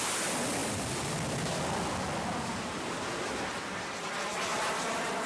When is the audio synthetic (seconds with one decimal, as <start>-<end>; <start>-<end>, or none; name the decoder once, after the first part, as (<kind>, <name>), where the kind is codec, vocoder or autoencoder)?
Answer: 0.6-1.9 (vocoder, BigVGAN v2); 4.5-5.3